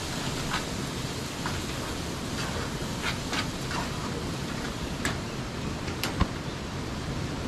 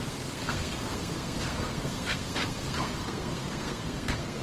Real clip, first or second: first